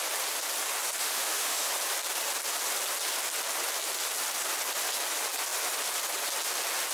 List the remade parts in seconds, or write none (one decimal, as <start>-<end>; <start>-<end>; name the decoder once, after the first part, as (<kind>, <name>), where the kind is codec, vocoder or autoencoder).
1.0-1.7 (autoencoder, DAC-VAE)